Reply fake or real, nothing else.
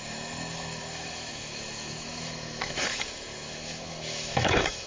fake